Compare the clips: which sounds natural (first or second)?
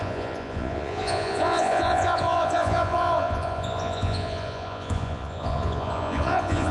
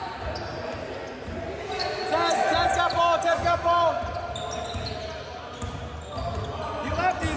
second